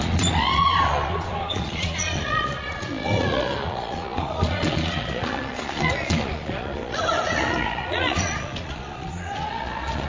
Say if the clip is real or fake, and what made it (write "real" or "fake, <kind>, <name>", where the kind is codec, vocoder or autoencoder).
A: fake, vocoder, Vocos